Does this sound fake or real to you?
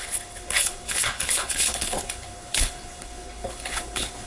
fake